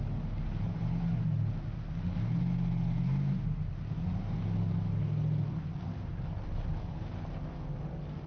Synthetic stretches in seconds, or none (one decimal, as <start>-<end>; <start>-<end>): 6.1-7.1